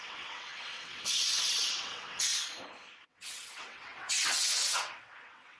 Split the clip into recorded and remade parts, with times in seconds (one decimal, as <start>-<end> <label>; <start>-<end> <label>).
0.0-2.3 remade; 2.3-3.0 recorded; 3.0-5.6 remade

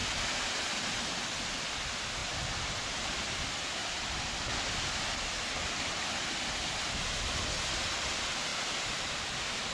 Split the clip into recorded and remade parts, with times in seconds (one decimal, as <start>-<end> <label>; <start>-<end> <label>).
0.0-1.5 remade; 1.5-3.8 recorded; 3.8-6.5 remade; 6.5-8.5 recorded; 8.5-9.7 remade